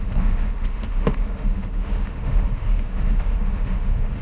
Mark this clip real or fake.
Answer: fake